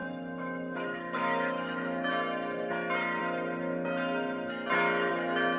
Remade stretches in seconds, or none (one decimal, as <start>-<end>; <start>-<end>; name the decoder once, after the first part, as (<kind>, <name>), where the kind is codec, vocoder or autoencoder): 0.0-2.1 (autoencoder, DAC-VAE)